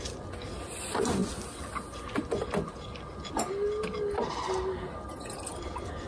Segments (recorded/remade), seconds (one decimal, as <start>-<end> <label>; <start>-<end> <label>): 0.0-6.1 recorded